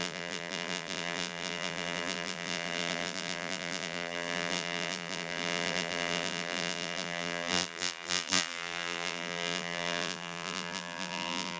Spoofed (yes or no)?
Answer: yes